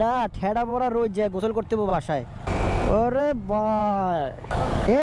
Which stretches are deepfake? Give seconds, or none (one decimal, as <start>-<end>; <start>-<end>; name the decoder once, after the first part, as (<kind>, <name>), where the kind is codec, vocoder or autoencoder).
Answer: 3.8-5.0 (codec, DAC)